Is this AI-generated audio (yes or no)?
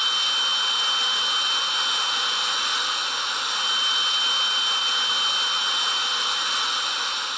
no